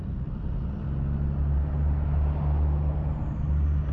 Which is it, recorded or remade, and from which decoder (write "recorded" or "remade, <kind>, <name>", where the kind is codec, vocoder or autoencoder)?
recorded